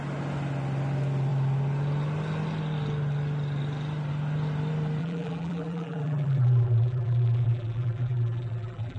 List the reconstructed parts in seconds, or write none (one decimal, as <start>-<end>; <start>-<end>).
5.0-9.0